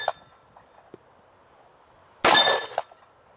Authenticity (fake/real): real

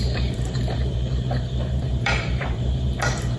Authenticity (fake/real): fake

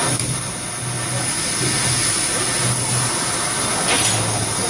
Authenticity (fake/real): real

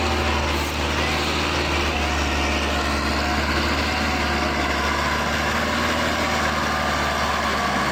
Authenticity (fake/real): real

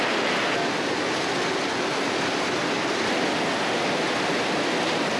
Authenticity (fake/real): real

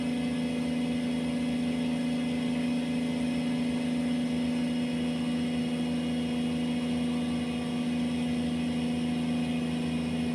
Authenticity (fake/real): real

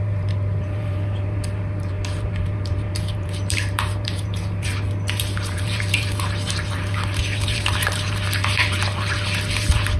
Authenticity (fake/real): fake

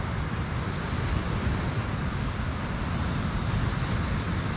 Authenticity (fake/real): real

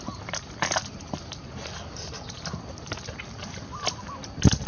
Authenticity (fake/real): real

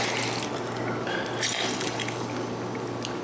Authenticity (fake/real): real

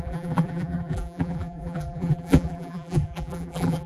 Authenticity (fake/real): fake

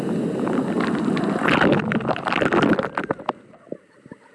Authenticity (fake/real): real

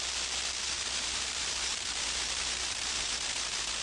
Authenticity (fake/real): fake